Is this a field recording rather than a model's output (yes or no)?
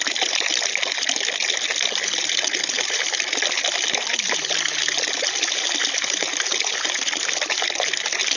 yes